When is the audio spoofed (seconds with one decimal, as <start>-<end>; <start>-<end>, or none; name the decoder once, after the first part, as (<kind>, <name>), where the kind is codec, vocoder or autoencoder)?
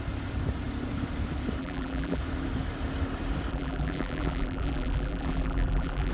1.6-2.2 (vocoder, BigVGAN v2); 3.5-6.1